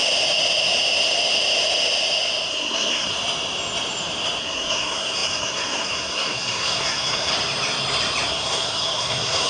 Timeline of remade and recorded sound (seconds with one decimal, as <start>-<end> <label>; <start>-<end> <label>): 0.0-2.5 recorded; 2.5-3.1 remade; 3.1-4.4 recorded; 4.4-7.3 remade; 7.3-8.3 recorded; 8.3-9.5 remade